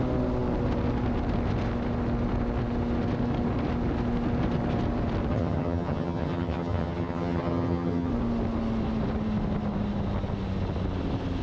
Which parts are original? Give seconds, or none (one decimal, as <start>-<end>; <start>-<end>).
0.0-5.3; 8.1-11.4